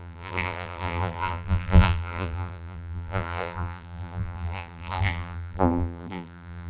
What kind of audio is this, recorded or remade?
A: remade